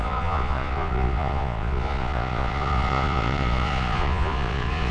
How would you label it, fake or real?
fake